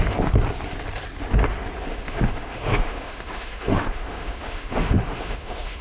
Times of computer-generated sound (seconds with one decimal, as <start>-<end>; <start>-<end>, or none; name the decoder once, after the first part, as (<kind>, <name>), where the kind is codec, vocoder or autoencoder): 1.9-5.8 (autoencoder, DAC-VAE)